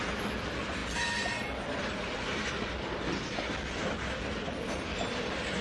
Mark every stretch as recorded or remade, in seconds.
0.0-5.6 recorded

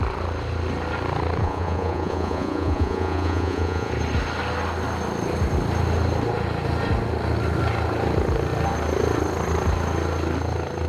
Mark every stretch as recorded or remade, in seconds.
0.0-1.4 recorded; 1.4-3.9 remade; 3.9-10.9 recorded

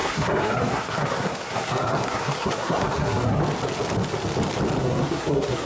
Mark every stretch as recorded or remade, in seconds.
0.0-3.4 remade; 3.4-4.8 recorded; 4.8-5.7 remade

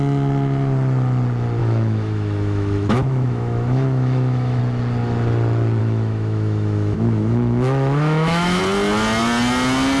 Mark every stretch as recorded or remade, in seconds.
0.0-1.6 recorded; 1.6-4.6 remade; 4.6-5.8 recorded; 5.8-8.6 remade; 8.6-10.0 recorded